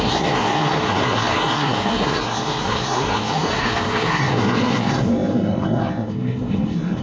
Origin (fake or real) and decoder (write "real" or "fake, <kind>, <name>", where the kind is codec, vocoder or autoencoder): fake, codec, SNAC